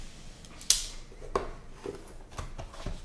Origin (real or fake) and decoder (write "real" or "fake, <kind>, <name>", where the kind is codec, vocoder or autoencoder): real